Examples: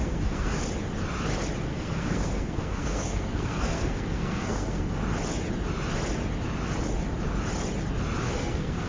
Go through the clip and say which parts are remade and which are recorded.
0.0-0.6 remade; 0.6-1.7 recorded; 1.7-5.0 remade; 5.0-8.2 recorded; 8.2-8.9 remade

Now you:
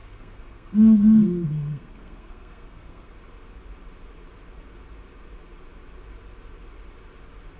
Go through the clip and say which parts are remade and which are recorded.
0.0-3.1 remade; 3.1-7.6 recorded

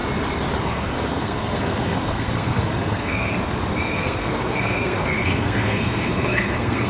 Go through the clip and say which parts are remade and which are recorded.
0.0-0.6 recorded; 0.6-3.3 remade; 3.3-3.8 recorded; 3.8-6.9 remade

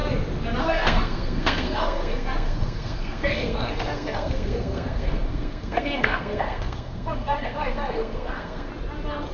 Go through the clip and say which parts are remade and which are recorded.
0.0-0.6 recorded; 0.6-8.7 remade; 8.7-9.3 recorded

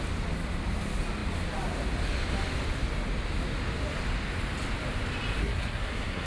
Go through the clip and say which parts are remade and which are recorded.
0.0-5.4 recorded; 5.4-6.3 remade

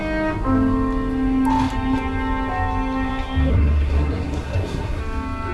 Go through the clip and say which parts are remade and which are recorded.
0.0-3.5 recorded; 3.5-5.0 remade; 5.0-5.5 recorded